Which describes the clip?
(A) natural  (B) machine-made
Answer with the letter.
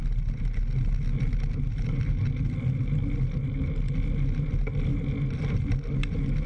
A